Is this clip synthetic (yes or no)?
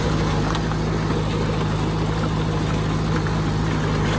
no